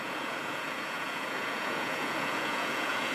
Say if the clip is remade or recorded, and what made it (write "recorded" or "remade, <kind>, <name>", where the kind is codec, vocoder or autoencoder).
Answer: remade, vocoder, Vocos